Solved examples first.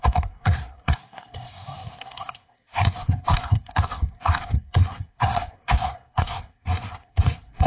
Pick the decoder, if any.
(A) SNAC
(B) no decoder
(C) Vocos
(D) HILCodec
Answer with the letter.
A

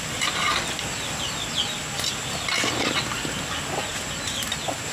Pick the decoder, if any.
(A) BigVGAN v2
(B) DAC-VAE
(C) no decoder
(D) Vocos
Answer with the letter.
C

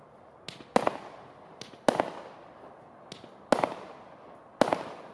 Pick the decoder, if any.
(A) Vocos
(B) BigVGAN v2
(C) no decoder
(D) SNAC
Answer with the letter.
C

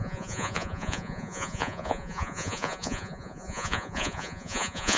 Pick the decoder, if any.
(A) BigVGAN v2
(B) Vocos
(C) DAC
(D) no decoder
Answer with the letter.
B